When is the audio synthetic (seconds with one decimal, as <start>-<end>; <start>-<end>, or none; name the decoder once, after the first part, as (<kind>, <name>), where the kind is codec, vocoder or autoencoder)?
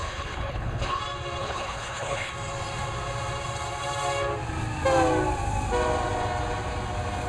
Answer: 0.0-1.0 (codec, HILCodec); 1.4-2.3